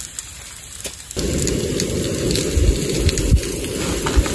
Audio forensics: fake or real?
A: real